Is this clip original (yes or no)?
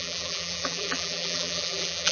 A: no